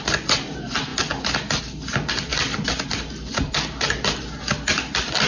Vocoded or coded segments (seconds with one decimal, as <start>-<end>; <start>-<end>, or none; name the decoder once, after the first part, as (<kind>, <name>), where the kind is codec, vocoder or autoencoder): none